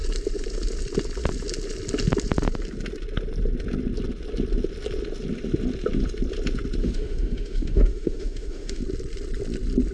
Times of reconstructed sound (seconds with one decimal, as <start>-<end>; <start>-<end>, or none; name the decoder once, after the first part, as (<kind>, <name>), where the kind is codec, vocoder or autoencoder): 6.8-8.8 (autoencoder, DAC-VAE)